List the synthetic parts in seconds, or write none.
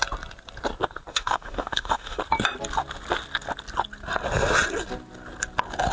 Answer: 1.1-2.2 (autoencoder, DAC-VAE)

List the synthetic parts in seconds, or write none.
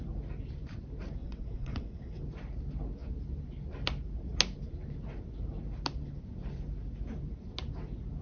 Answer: 1.2-2.2 (vocoder, WaveNeXt)